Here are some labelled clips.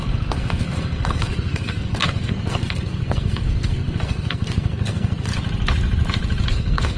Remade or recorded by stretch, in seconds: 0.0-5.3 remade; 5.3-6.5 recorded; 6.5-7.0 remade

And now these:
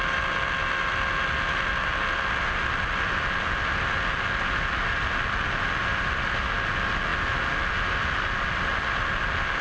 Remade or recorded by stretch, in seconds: 0.0-9.6 recorded

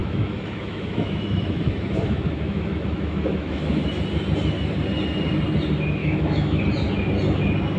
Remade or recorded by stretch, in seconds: 0.0-3.9 remade; 3.9-6.0 recorded; 6.0-6.6 remade; 6.6-7.8 recorded

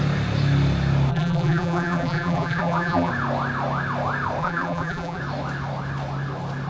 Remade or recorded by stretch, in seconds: 0.0-1.1 recorded; 1.1-3.1 remade; 3.1-4.4 recorded; 4.4-5.2 remade; 5.2-6.7 recorded

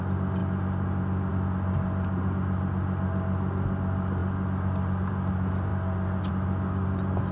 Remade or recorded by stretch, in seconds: 0.0-7.3 recorded

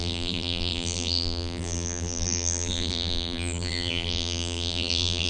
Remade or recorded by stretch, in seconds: 0.0-5.3 remade